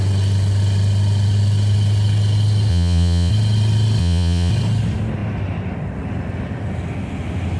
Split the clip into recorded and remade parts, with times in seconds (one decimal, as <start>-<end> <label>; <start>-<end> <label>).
0.0-2.7 recorded; 2.7-3.3 remade; 3.3-4.0 recorded; 4.0-4.5 remade; 4.5-7.6 recorded